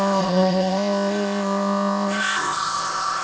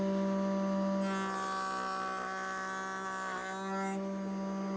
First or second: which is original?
second